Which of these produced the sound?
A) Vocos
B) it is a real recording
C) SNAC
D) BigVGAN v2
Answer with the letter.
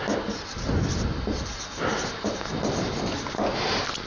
B